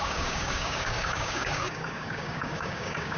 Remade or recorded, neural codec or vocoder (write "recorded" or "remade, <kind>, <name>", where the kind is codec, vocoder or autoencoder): remade, codec, DAC